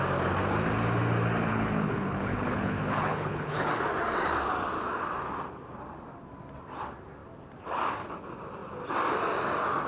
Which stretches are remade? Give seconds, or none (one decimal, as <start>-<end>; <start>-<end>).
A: 1.5-3.7